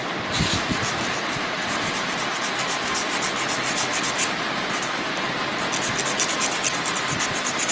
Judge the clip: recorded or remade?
recorded